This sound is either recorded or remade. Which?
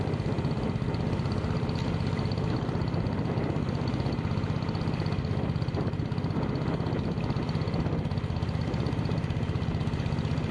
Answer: recorded